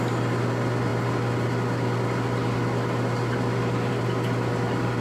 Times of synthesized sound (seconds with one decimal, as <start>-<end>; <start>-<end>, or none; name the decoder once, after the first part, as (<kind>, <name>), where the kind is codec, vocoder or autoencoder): none

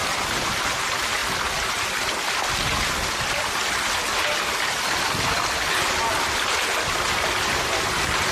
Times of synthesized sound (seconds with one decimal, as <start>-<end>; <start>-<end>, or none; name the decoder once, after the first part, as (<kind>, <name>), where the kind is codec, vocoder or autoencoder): none

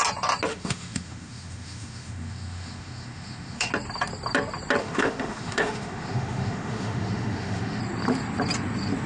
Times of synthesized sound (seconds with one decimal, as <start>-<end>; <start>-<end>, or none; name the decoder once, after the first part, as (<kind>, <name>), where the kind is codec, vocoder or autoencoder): 0.5-3.7 (autoencoder, DAC-VAE); 4.8-7.8

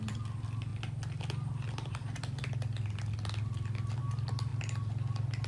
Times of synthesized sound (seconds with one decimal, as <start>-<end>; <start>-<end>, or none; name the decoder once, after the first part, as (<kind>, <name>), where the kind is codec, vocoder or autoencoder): none

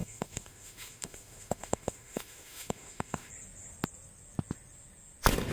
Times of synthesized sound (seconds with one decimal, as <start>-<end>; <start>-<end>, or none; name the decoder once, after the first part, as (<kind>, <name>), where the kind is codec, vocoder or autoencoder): 0.0-3.3 (autoencoder, DAC-VAE)

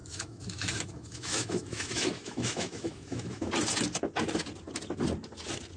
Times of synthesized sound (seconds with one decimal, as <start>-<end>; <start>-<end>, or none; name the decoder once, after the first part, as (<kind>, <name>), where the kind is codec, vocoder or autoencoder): 0.0-3.5 (autoencoder, DAC-VAE)

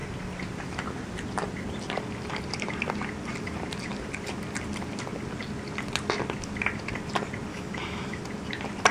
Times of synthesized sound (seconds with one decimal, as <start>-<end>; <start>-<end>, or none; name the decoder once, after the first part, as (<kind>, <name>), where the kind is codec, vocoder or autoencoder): 7.5-8.2 (autoencoder, DAC-VAE)